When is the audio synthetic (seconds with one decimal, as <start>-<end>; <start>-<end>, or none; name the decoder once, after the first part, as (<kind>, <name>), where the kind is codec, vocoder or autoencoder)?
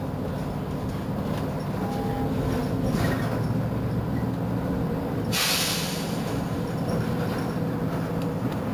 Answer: none